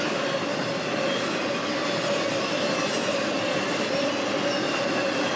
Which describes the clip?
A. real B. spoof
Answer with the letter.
A